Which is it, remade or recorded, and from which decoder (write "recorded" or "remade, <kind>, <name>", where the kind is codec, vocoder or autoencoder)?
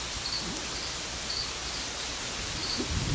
recorded